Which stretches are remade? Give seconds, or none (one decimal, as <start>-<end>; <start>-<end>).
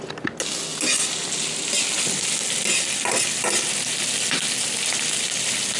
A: none